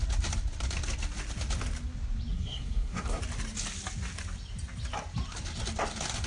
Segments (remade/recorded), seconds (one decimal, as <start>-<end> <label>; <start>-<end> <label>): 0.0-2.3 recorded; 2.3-3.2 remade; 3.2-6.3 recorded